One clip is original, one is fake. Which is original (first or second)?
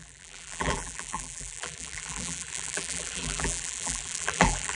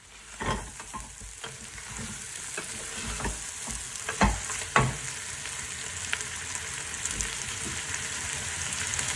second